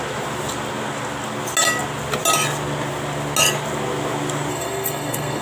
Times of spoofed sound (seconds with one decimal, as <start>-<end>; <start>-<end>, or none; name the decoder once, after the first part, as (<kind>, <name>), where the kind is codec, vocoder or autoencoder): 4.5-5.4 (codec, SNAC)